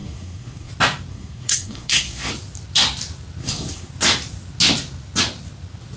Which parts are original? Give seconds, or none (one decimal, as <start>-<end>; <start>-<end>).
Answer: 0.7-1.1; 2.3-3.4; 3.9-6.0